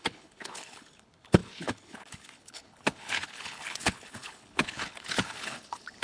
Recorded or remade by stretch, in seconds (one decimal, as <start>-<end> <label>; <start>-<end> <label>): 0.0-6.0 remade